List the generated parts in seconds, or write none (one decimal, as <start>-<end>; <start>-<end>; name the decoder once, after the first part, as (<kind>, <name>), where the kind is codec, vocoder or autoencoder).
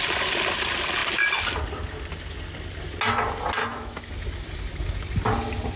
3.6-4.1 (autoencoder, DAC-VAE)